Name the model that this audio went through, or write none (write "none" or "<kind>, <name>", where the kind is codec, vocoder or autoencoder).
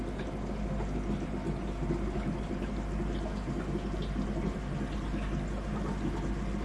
none